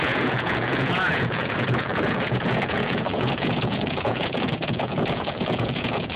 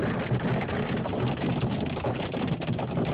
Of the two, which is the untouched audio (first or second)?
second